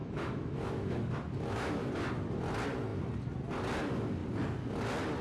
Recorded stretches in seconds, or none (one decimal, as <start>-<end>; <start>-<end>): 1.9-5.2

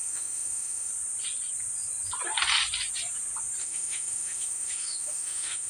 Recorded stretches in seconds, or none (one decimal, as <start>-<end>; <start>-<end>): 0.9-3.6

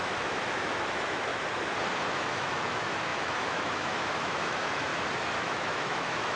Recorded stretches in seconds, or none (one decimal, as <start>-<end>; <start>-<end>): 1.3-2.0; 4.9-5.4